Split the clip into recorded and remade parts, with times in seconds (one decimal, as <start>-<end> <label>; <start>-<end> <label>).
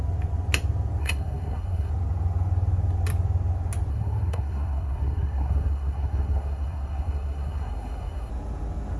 0.0-1.0 recorded; 1.0-1.9 remade; 1.9-3.9 recorded; 3.9-8.3 remade; 8.3-9.0 recorded